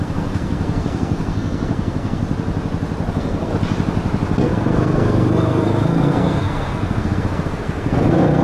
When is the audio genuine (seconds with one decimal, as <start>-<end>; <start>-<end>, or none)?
2.2-3.1; 3.5-4.4